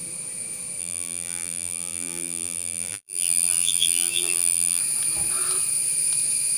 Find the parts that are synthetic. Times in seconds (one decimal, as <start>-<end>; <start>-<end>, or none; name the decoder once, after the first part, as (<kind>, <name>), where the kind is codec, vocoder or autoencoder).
0.8-4.8 (vocoder, BigVGAN v2)

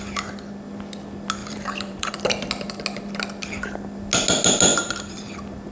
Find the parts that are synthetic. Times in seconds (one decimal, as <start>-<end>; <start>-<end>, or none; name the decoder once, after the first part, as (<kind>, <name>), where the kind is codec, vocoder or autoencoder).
1.4-2.1 (vocoder, BigVGAN v2); 4.7-5.3